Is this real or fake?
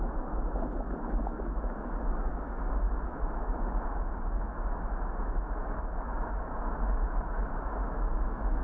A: fake